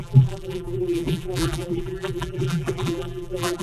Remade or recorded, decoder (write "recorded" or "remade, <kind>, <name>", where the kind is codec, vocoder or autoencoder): remade, vocoder, BigVGAN v2